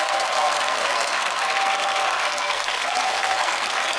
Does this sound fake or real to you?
fake